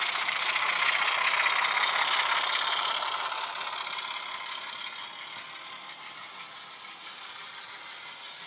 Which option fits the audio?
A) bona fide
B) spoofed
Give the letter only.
A